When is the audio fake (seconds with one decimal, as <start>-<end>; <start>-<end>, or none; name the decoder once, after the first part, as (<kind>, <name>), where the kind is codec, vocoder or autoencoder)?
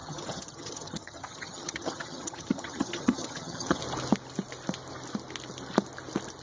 0.0-3.8 (vocoder, HiFi-GAN)